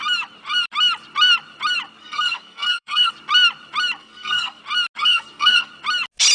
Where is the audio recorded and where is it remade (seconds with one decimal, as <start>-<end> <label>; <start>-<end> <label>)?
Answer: 0.0-2.0 recorded; 2.0-3.1 remade; 3.1-4.0 recorded; 4.0-4.6 remade; 4.6-5.0 recorded; 5.0-5.7 remade; 5.7-6.3 recorded